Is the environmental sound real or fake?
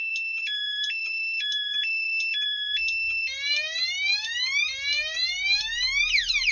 fake